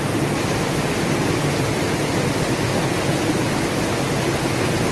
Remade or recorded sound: recorded